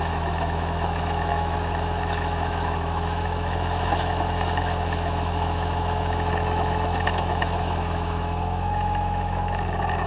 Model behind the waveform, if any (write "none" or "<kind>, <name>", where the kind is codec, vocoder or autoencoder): autoencoder, DAC-VAE